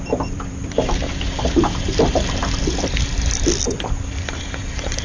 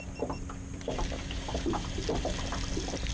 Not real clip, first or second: first